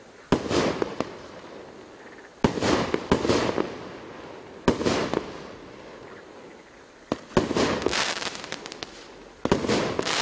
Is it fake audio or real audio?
real